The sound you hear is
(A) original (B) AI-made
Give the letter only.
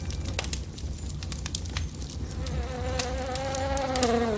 A